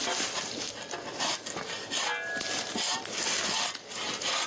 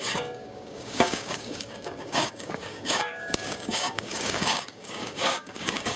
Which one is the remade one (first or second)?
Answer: second